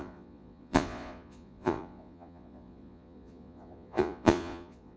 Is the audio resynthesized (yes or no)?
yes